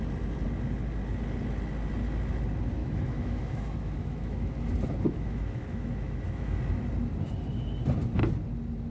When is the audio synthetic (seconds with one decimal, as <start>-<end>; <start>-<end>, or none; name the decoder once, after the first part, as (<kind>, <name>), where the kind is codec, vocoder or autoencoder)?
2.8-6.6 (autoencoder, DAC-VAE)